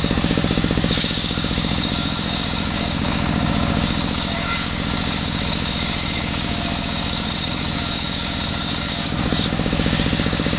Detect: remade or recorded remade